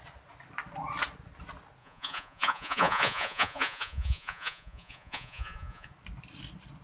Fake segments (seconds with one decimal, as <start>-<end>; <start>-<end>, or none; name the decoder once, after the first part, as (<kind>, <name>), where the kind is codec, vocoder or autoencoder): 1.8-5.9 (vocoder, Vocos)